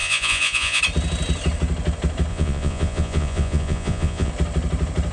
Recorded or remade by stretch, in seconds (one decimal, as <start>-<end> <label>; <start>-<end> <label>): 0.0-0.8 remade; 0.8-2.3 recorded; 2.3-4.3 remade; 4.3-5.1 recorded